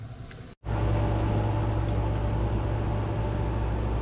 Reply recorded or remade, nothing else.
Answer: recorded